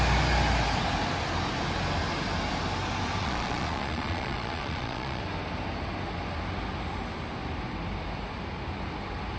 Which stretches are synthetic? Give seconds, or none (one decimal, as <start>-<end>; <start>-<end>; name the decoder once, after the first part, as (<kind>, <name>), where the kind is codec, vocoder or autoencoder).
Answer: 3.2-5.2 (vocoder, Vocos)